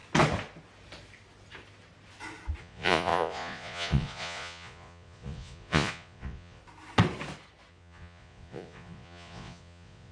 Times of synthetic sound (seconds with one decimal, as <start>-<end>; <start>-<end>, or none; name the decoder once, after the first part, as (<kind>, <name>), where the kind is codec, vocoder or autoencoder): 2.6-6.6 (vocoder, Vocos); 7.7-10.1